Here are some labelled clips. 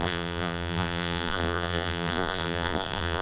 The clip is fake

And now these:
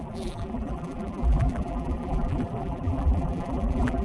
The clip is fake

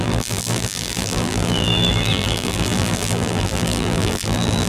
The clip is fake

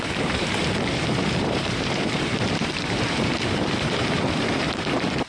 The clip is fake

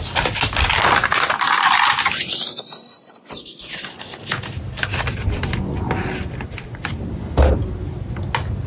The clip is real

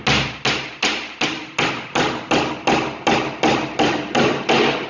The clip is real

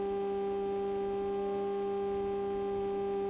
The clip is real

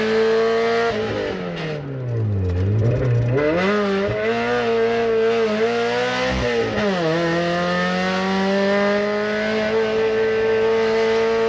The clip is real